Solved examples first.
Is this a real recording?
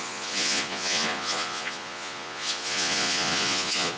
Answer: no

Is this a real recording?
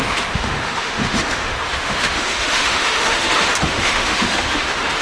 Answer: no